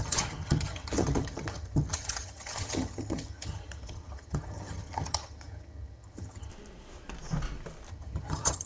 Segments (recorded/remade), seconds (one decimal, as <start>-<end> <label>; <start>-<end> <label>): 0.0-6.5 remade; 6.5-7.9 recorded; 7.9-8.7 remade